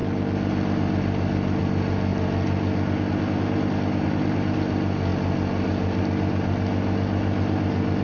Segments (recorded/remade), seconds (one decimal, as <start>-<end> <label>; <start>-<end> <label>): 0.0-8.0 recorded